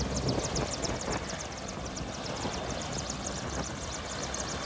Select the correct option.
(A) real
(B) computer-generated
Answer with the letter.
A